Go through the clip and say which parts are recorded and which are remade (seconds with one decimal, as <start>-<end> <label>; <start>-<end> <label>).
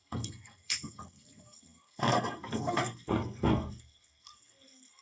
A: 0.0-5.0 remade